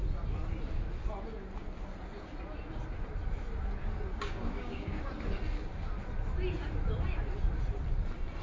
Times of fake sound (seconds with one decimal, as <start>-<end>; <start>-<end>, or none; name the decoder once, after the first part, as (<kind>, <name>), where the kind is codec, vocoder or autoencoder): 4.1-5.0 (codec, DAC)